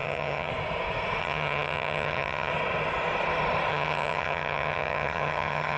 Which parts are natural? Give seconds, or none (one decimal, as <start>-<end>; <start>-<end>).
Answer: 0.5-1.2; 2.5-3.7